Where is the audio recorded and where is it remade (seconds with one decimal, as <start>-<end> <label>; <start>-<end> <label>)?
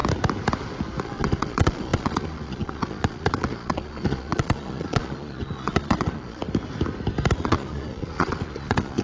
0.0-1.0 recorded; 1.0-6.4 remade; 6.4-7.4 recorded; 7.4-9.0 remade